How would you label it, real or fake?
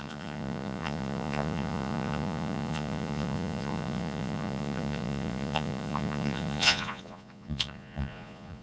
fake